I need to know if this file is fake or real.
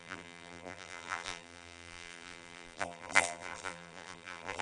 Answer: fake